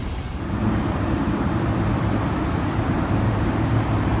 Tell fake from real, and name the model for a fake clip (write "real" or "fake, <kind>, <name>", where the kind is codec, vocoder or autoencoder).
fake, vocoder, BigVGAN v2